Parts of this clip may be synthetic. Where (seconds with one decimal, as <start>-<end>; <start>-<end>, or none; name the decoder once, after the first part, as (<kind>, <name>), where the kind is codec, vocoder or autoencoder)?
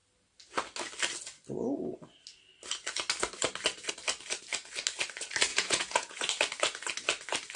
5.5-6.3 (vocoder, Vocos)